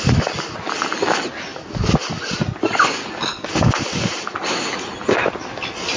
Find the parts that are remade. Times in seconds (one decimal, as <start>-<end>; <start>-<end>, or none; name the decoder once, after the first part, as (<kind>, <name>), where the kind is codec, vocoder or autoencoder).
none